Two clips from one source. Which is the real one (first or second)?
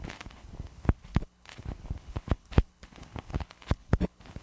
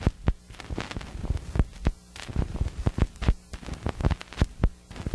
second